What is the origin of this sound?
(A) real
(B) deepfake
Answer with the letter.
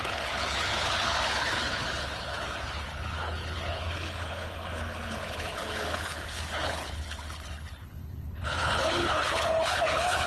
B